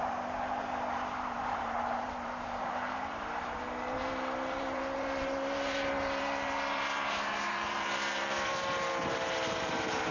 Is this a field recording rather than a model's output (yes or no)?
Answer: no